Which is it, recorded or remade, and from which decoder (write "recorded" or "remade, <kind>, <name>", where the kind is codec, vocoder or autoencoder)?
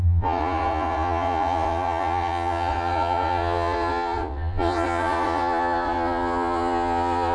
remade, vocoder, Vocos